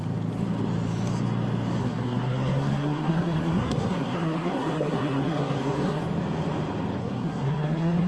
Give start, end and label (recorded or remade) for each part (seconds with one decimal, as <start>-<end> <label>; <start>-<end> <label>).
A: 0.0-1.8 recorded; 1.8-6.0 remade; 6.0-7.0 recorded; 7.0-8.1 remade